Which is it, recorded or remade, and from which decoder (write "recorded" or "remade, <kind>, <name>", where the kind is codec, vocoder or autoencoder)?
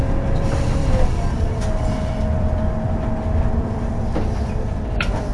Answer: remade, vocoder, BigVGAN v2